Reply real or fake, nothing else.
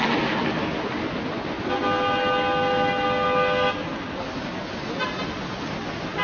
real